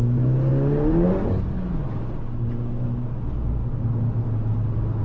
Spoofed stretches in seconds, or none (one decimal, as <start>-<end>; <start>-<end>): none